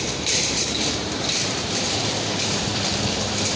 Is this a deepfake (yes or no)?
yes